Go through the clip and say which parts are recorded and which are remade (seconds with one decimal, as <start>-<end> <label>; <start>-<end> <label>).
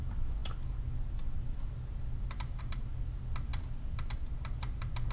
0.0-5.1 recorded